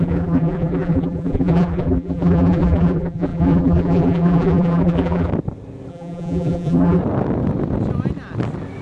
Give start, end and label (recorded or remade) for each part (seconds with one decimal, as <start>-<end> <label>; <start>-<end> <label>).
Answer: 0.0-5.3 remade; 5.3-5.9 recorded; 5.9-7.0 remade; 7.0-8.8 recorded